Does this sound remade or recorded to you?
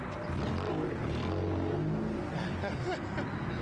recorded